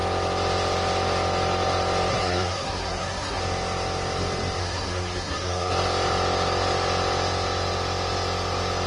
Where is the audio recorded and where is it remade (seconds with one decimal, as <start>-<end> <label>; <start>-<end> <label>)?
0.0-2.1 recorded; 2.1-3.4 remade; 3.4-4.6 recorded; 4.6-5.7 remade; 5.7-8.9 recorded